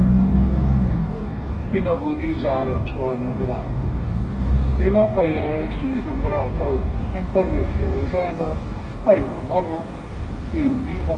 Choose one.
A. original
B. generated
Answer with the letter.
B